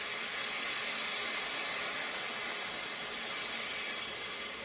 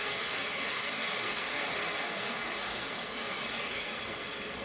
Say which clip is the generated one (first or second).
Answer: second